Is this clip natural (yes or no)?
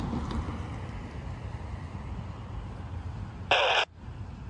yes